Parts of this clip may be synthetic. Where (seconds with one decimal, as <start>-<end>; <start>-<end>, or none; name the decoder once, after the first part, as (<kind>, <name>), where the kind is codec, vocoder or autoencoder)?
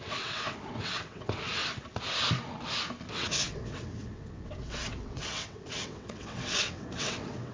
0.0-1.6 (vocoder, WaveNeXt); 3.1-7.5